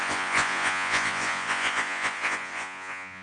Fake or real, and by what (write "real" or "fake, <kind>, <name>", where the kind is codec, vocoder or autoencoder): fake, vocoder, Vocos